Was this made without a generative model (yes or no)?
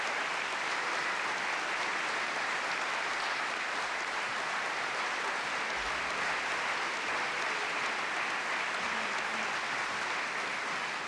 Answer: yes